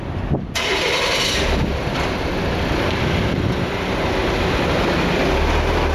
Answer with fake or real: real